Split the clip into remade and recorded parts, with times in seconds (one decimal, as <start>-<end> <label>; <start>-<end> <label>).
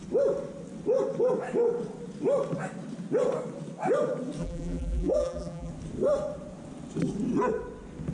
0.0-4.4 recorded; 4.4-5.7 remade; 5.7-8.1 recorded